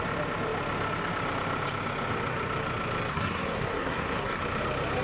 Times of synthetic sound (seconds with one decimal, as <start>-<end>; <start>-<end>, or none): 3.1-4.4